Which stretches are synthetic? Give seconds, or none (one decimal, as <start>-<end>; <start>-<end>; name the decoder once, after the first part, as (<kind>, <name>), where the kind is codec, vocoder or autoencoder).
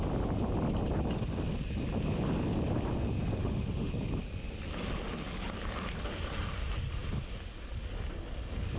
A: 3.4-3.9 (autoencoder, DAC-VAE)